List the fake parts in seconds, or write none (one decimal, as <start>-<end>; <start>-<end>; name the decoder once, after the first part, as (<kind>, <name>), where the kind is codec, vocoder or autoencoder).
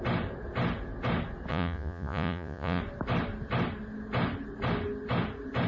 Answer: 1.5-2.8 (vocoder, Vocos)